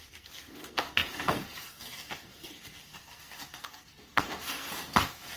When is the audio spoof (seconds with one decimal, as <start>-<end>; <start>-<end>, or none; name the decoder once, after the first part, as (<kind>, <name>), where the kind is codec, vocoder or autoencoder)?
0.0-5.4 (codec, SNAC)